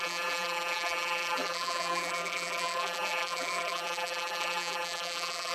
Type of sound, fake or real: fake